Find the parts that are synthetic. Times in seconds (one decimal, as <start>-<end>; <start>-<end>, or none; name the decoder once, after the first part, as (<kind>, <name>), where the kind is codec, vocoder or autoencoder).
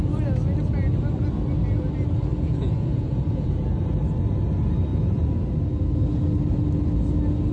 2.3-3.6 (vocoder, Vocos); 4.9-5.6